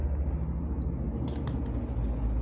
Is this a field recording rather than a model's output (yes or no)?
yes